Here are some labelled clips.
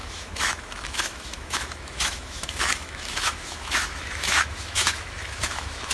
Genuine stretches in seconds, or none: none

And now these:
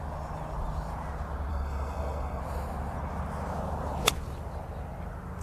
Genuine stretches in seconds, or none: 0.0-1.5; 2.4-5.4

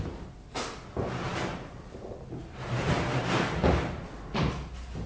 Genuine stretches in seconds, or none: 0.0-5.1

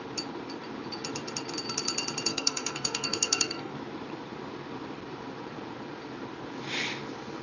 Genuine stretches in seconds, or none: 0.0-2.3; 3.7-7.4

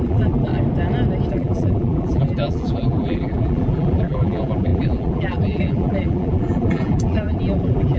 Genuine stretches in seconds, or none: 0.5-1.3

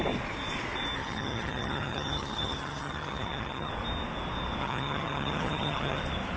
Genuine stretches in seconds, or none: 0.0-1.0; 3.7-4.6; 6.0-6.4

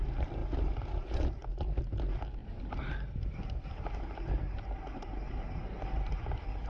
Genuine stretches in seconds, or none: 0.0-0.4; 1.3-2.4; 5.2-6.7